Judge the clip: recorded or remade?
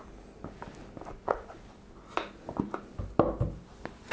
recorded